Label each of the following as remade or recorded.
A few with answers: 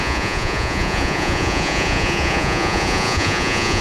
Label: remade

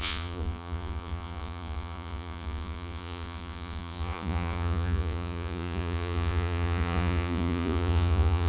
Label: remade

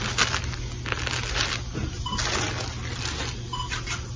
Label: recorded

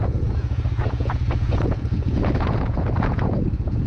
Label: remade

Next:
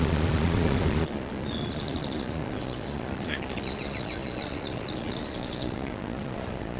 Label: remade